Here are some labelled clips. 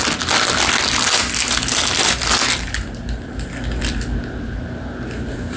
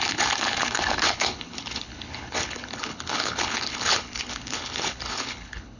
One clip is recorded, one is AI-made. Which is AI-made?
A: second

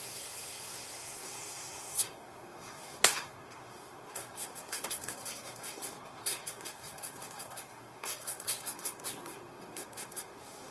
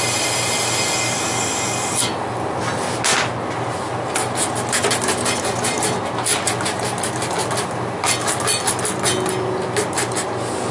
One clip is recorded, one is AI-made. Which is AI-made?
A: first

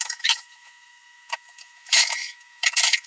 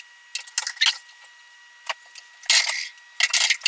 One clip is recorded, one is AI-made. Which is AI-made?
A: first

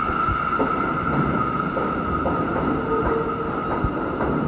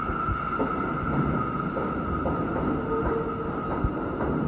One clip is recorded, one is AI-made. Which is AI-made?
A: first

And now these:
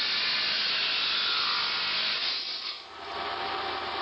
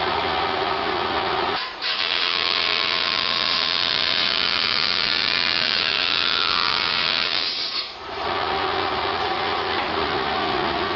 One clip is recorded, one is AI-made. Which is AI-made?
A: second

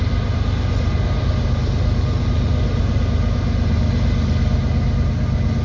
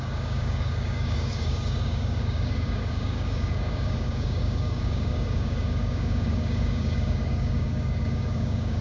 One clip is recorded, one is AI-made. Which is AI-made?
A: second